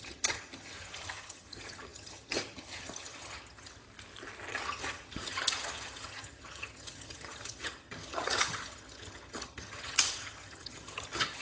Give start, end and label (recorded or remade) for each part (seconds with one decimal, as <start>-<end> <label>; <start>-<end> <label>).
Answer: 0.0-3.8 remade; 3.8-4.5 recorded; 4.5-11.4 remade